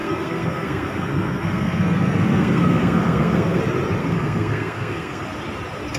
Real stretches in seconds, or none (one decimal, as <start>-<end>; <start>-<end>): 3.6-4.0; 5.2-6.0